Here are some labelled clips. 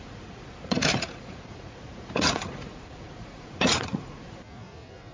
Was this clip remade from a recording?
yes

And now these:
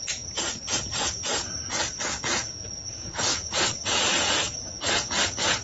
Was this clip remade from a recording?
yes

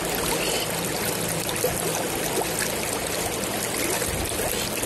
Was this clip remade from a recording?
no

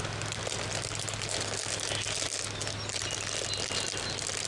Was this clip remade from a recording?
no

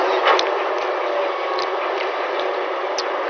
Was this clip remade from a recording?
no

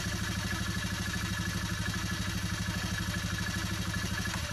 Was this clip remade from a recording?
no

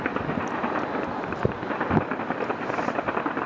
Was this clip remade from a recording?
no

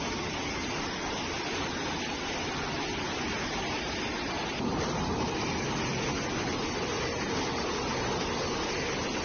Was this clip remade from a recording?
no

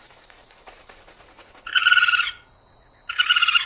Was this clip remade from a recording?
yes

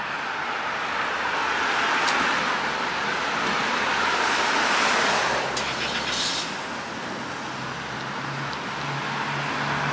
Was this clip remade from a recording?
no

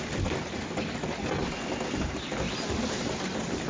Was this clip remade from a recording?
no